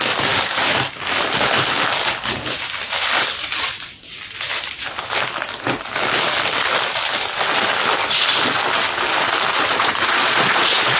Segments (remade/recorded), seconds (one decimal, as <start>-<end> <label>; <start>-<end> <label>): 0.0-9.5 recorded; 9.5-11.0 remade